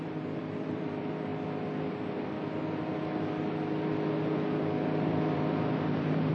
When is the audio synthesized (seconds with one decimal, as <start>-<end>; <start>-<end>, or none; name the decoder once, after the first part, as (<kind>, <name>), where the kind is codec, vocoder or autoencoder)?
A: 0.0-1.3 (vocoder, BigVGAN v2); 5.1-6.3